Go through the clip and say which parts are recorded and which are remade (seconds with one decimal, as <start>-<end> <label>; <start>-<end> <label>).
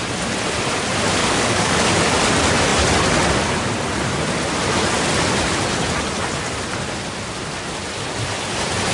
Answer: 0.0-1.2 recorded; 1.2-1.9 remade; 1.9-8.9 recorded